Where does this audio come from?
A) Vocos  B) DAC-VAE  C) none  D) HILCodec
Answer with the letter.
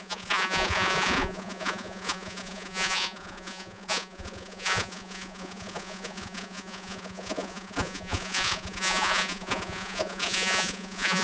A